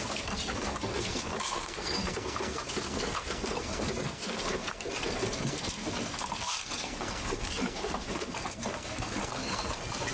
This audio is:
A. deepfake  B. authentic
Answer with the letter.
A